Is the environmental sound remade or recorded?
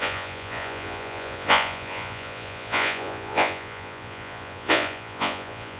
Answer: remade